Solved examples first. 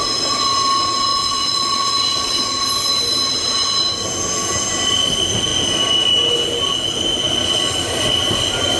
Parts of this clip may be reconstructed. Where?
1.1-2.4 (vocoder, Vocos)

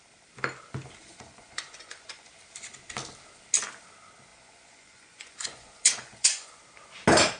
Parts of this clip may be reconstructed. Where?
1.0-2.3 (vocoder, Vocos); 4.3-6.6

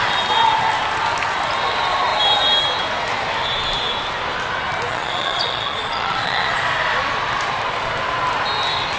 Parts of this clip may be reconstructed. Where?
4.9-6.5 (vocoder, Vocos)

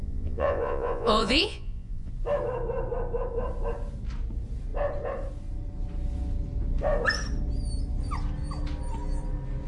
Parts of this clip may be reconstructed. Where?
0.0-2.1 (vocoder, Vocos)

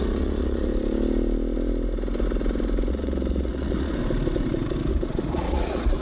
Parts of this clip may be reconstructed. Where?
0.0-0.7 (vocoder, Vocos); 2.9-4.0; 4.9-6.0

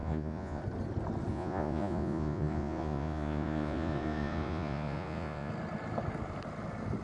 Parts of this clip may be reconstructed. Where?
0.0-0.6 (vocoder, Vocos); 1.3-5.5

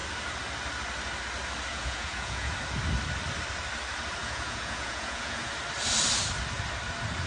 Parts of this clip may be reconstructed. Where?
1.7-2.5 (vocoder, Vocos); 4.2-5.5